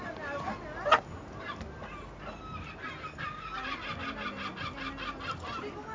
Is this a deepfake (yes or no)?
no